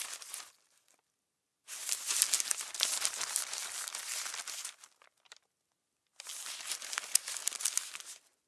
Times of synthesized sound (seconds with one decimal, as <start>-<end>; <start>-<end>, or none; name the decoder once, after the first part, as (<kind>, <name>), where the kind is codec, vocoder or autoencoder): none